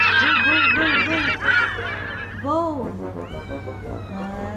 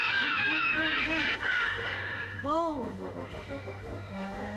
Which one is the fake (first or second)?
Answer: second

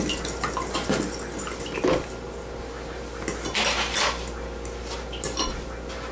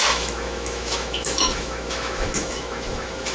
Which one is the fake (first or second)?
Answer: second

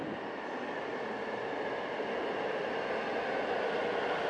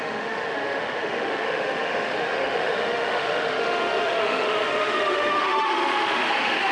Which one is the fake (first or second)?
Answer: second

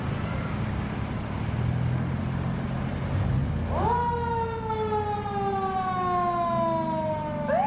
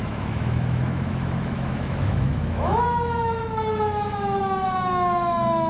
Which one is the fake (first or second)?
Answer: second